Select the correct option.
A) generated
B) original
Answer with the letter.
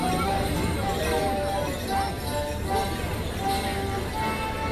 B